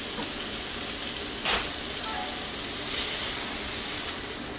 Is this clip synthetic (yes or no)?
no